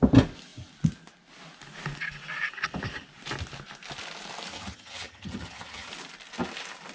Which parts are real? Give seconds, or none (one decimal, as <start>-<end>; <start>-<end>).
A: 0.0-4.5; 5.9-6.9